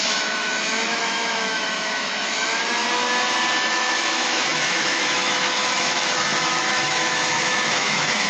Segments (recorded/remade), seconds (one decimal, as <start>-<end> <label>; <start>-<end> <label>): 0.0-2.8 remade; 2.8-3.7 recorded; 3.7-8.3 remade